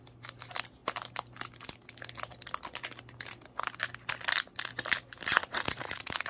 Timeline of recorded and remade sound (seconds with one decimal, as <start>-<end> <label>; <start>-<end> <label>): 0.0-5.3 recorded; 5.3-6.3 remade